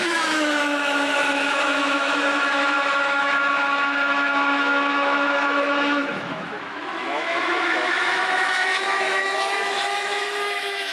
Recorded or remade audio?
remade